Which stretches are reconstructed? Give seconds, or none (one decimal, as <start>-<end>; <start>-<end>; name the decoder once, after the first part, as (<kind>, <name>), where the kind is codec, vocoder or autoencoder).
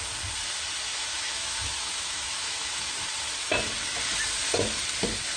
0.9-3.0 (autoencoder, DAC-VAE)